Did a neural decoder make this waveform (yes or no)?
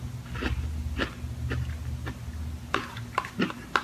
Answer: no